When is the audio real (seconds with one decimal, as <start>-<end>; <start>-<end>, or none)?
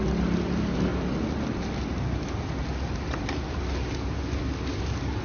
0.0-5.2